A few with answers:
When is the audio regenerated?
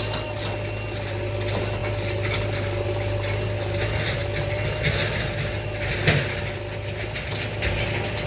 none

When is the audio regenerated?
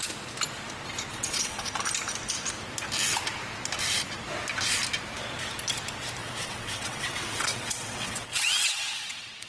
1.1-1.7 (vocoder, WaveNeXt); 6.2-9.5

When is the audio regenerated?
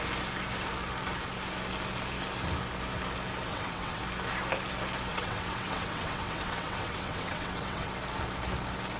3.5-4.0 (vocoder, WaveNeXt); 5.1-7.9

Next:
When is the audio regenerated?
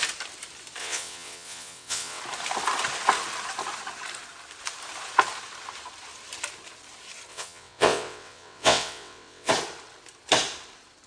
0.8-2.2 (vocoder, WaveNeXt); 7.3-9.5